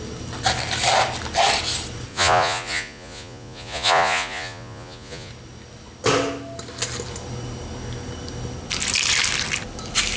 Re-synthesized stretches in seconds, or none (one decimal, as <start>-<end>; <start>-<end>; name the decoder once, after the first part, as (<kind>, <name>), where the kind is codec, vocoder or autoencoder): 2.1-5.3 (vocoder, Vocos)